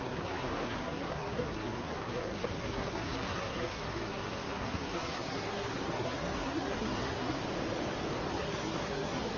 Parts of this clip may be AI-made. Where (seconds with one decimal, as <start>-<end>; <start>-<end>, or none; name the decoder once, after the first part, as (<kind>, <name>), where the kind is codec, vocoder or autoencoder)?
0.0-7.4 (codec, SNAC); 8.3-9.4